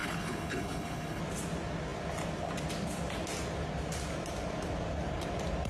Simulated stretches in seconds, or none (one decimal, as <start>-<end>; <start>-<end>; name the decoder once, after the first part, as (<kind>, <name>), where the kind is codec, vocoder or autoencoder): 0.0-1.2 (codec, HILCodec)